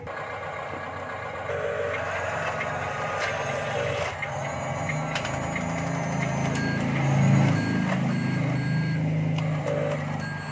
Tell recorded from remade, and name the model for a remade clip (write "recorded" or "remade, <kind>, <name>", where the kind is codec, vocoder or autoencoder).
recorded